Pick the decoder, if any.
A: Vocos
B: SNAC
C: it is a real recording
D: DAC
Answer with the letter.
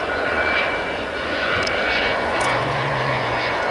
A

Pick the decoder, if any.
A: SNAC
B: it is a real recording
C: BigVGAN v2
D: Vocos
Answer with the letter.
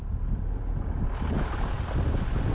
B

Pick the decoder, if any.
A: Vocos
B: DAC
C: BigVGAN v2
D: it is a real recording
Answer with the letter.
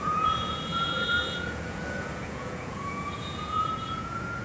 A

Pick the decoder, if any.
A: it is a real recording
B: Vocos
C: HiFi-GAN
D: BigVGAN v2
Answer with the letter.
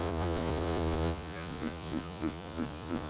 B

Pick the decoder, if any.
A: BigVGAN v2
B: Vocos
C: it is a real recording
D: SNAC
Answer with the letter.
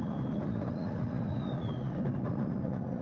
B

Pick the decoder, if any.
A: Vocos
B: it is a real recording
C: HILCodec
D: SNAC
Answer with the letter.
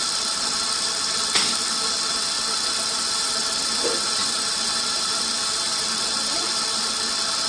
B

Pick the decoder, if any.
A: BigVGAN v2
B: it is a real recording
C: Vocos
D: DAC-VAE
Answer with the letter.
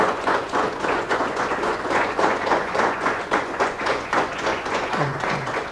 C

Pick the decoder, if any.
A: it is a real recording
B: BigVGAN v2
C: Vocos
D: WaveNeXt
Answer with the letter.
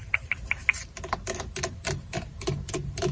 A